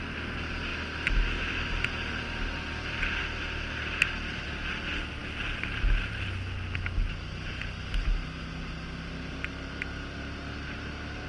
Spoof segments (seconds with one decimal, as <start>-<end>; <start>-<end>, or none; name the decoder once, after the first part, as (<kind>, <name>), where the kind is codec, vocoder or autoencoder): none